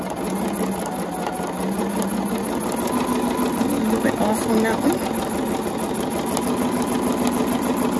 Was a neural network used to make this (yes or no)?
no